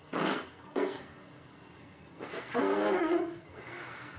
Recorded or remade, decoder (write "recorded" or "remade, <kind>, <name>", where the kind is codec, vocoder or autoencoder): remade, codec, SNAC